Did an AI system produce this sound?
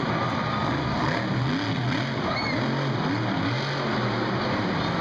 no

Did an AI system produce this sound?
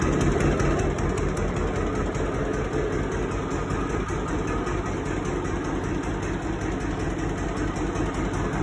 no